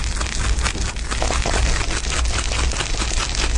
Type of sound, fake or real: real